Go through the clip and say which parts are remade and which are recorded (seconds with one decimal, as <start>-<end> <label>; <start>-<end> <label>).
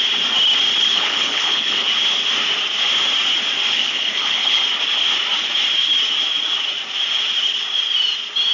0.0-0.7 recorded; 0.7-1.9 remade; 1.9-3.7 recorded; 3.7-4.6 remade; 4.6-8.5 recorded